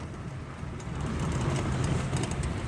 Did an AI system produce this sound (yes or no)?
no